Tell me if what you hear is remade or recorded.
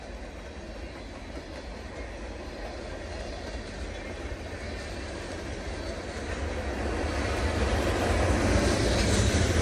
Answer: recorded